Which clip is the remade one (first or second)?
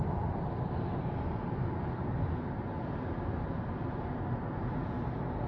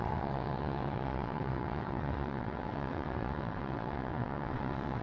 second